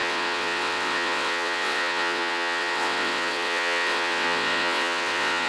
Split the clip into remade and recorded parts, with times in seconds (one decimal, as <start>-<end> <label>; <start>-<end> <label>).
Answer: 0.0-5.5 remade